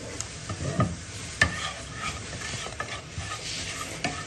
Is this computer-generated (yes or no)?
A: yes